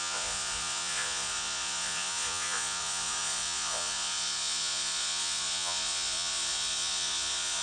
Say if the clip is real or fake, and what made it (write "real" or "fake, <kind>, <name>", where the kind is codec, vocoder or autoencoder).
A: fake, vocoder, Vocos